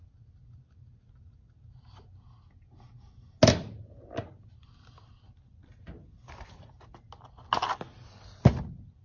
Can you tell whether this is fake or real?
real